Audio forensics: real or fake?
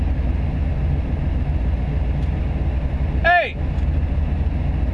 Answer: real